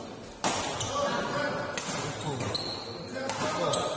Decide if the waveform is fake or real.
real